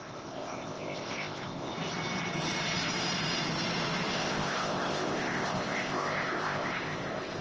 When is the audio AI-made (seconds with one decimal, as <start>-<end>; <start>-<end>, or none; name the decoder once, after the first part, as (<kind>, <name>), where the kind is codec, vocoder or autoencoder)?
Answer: 0.0-1.7 (codec, ZipCodec); 4.1-7.4